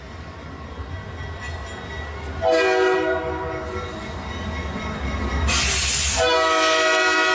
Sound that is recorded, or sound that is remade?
recorded